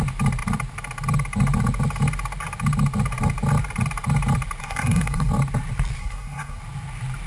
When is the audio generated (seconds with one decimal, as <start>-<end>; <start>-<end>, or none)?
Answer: 4.6-5.3; 6.0-6.6